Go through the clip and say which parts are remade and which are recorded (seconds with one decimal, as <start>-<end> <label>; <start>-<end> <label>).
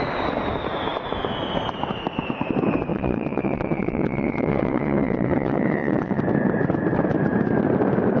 0.0-2.9 recorded; 2.9-6.2 remade; 6.2-8.2 recorded